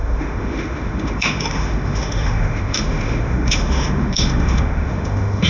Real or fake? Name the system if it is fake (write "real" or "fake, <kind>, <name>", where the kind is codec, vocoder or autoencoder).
fake, autoencoder, DAC-VAE